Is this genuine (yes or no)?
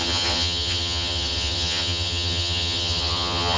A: no